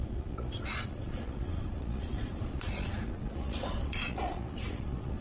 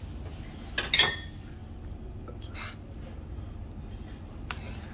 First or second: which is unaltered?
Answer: second